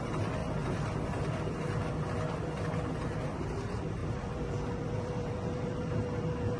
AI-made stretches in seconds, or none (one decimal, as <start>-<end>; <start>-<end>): 0.0-0.4; 2.6-6.6